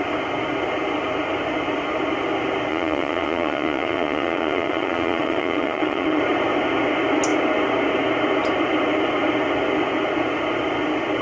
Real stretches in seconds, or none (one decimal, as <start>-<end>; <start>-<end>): 0.0-2.7; 6.2-11.2